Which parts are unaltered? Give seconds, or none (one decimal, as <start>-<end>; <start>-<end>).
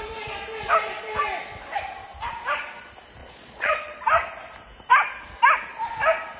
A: 0.0-3.2; 4.0-6.4